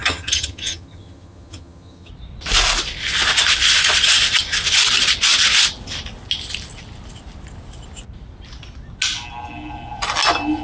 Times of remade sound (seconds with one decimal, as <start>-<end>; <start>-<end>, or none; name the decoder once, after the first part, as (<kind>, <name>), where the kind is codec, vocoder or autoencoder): 0.0-2.1 (vocoder, HiFi-GAN)